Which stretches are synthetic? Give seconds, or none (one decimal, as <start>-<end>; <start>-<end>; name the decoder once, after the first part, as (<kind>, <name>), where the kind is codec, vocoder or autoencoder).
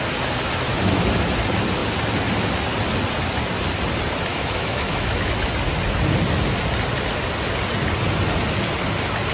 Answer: 4.3-5.3 (autoencoder, DAC-VAE)